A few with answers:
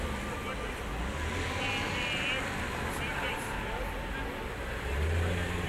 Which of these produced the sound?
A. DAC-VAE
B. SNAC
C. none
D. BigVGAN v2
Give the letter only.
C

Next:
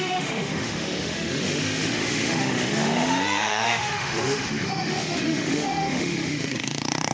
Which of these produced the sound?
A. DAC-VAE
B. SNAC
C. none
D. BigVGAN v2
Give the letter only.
A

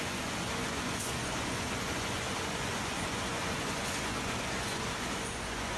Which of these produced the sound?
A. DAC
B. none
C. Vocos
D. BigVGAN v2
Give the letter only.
C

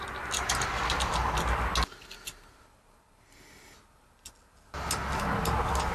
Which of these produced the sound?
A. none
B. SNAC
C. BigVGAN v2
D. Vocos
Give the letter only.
A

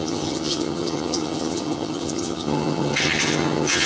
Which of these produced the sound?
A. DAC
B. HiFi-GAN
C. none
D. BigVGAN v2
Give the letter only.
B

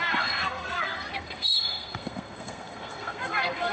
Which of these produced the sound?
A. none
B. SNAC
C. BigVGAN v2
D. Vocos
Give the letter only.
B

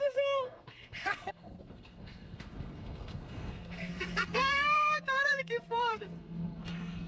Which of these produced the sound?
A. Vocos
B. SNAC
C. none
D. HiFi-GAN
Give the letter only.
B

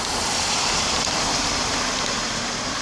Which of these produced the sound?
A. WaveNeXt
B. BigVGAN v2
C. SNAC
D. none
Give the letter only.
D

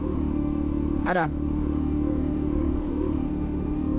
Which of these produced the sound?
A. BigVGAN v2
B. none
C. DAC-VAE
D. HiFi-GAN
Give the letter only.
C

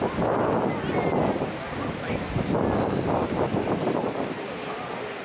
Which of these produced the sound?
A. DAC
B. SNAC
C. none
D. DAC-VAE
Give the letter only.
C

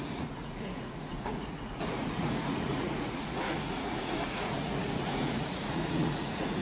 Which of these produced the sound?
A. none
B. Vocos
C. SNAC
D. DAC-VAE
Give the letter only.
B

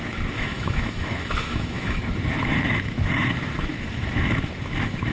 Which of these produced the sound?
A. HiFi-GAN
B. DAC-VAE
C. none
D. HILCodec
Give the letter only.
B